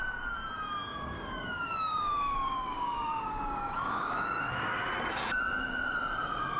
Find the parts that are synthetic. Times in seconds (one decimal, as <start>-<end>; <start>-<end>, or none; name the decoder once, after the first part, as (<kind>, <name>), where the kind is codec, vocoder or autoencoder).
0.9-4.9 (codec, DAC)